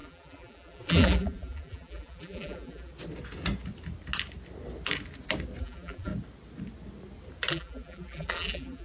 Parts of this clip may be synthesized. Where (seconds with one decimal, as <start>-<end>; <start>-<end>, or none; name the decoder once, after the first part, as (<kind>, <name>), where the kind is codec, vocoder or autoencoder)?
0.0-2.9 (vocoder, BigVGAN v2); 5.6-6.1; 7.5-8.8